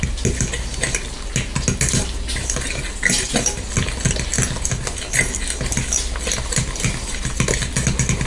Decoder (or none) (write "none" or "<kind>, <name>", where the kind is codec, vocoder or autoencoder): none